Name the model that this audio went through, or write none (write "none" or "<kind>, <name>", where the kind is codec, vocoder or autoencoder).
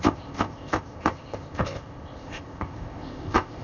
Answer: codec, ZipCodec